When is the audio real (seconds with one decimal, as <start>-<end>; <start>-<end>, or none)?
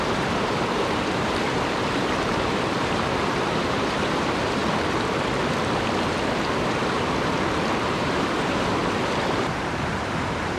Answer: 4.6-8.0; 8.8-9.3